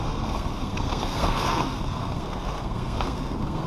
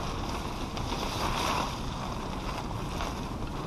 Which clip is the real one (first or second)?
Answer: second